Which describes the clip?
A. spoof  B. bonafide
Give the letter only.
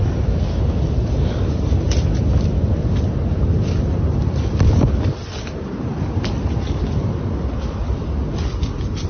B